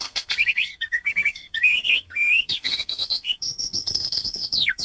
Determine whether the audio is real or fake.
fake